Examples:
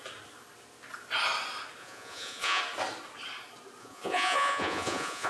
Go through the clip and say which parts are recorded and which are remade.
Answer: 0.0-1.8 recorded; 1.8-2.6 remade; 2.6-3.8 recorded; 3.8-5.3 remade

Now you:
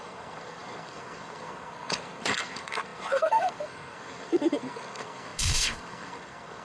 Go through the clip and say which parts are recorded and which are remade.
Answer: 0.0-6.6 remade

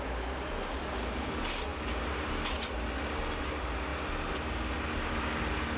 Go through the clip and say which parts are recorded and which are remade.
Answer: 0.0-5.8 recorded